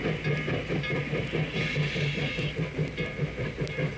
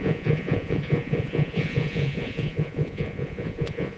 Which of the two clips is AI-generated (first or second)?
second